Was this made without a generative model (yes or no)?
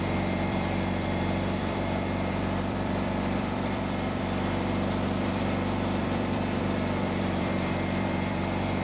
no